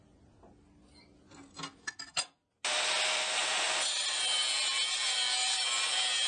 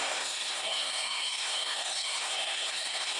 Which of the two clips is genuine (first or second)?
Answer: first